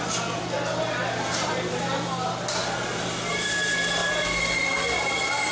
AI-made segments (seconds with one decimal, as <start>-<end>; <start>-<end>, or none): none